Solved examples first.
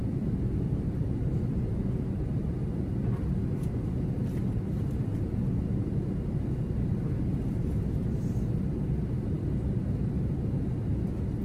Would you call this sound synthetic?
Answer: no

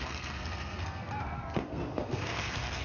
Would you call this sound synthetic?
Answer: yes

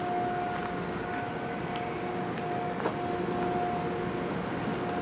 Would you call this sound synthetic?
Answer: no